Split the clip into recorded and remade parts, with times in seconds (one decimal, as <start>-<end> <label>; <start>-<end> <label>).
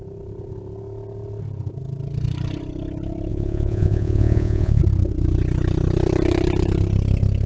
0.0-3.3 recorded; 3.3-4.8 remade; 4.8-7.5 recorded